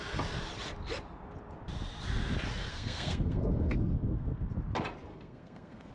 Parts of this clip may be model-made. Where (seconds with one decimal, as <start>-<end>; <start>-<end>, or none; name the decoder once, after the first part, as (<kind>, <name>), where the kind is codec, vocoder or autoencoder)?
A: 2.7-4.5 (codec, SNAC); 5.1-5.9